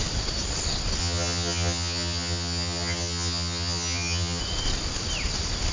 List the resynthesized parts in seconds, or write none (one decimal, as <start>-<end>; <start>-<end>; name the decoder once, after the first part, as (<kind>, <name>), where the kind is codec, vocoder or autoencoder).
1.0-4.4 (vocoder, HiFi-GAN)